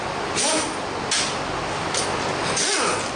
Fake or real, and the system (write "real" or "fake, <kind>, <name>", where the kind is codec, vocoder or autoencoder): real